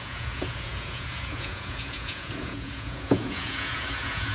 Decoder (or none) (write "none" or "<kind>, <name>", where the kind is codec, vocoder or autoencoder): vocoder, Vocos